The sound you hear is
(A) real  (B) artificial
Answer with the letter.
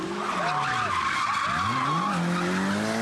A